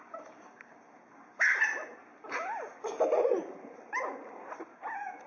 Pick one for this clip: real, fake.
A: real